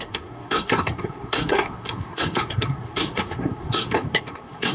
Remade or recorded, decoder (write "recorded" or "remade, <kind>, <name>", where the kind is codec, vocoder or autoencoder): remade, codec, SNAC